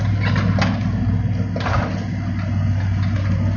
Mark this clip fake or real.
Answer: real